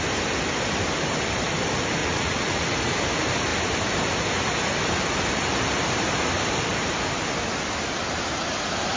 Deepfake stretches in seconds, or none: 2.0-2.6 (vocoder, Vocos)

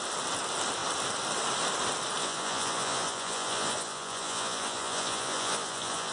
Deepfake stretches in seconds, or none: 2.2-6.1 (vocoder, Vocos)

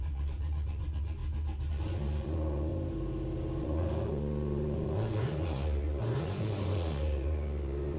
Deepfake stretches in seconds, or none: 0.0-1.2 (vocoder, Vocos); 1.7-2.7; 3.6-8.0

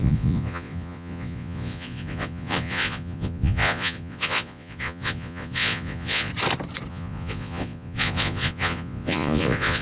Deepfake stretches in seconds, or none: 0.0-6.3 (vocoder, Vocos); 6.9-9.8

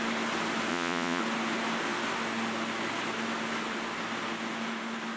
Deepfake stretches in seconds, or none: 0.7-1.2 (vocoder, Vocos)

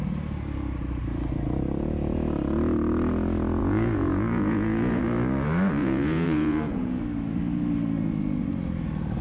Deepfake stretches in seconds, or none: 3.6-5.0 (vocoder, Vocos); 5.8-7.0

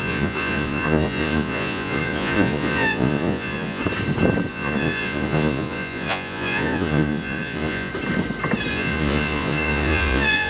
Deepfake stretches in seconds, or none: 0.0-3.8 (vocoder, Vocos); 4.5-7.9; 8.7-10.5

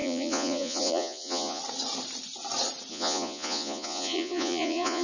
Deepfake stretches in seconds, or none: 0.0-1.6 (vocoder, Vocos); 2.9-5.0